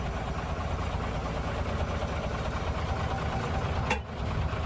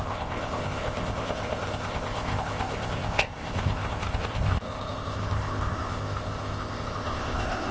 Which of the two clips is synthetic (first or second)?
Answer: second